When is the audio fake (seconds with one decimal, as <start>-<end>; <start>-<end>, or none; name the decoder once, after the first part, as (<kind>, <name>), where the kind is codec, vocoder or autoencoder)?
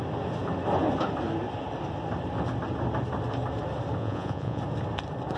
4.0-4.6 (vocoder, Vocos)